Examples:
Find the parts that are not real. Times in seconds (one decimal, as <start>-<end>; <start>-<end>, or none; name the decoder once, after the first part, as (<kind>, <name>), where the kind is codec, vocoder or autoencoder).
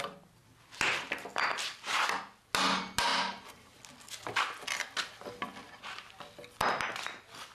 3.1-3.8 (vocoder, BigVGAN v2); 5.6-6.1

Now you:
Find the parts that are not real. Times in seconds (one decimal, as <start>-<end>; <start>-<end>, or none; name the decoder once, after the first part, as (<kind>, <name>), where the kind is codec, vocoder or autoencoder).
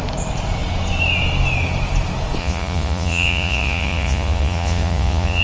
2.4-5.4 (vocoder, Vocos)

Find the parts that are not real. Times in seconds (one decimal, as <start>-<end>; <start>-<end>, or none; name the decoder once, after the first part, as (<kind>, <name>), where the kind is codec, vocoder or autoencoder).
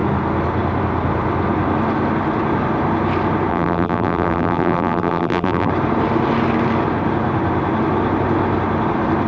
3.5-5.7 (vocoder, BigVGAN v2)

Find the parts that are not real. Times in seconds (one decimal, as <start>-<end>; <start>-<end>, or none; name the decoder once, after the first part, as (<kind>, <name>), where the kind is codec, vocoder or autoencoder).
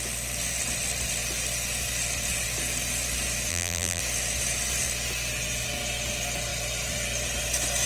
3.5-4.0 (vocoder, BigVGAN v2)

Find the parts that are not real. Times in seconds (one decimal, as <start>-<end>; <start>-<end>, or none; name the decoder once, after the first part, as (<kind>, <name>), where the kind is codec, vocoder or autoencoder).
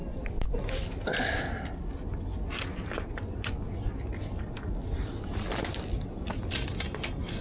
none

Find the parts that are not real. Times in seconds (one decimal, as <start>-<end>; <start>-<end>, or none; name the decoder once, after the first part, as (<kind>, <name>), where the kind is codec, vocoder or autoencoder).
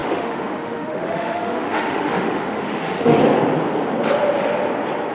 0.0-3.2 (autoencoder, DAC-VAE)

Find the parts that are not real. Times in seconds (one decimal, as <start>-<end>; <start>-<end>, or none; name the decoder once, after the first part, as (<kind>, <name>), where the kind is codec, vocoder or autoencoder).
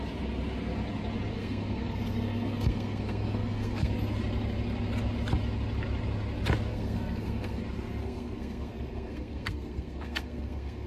1.3-3.9 (codec, SNAC); 6.7-7.6; 8.0-10.9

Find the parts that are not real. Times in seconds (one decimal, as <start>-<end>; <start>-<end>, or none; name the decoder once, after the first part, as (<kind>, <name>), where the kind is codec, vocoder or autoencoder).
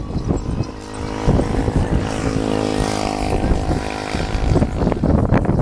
none